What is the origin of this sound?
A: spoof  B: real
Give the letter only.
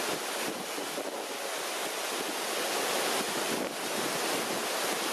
B